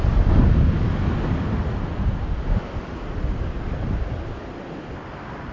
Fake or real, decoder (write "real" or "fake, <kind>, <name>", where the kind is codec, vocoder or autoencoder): real